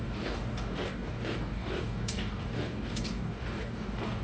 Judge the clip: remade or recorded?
remade